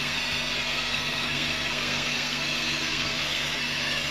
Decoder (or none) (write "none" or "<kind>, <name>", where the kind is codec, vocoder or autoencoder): codec, SNAC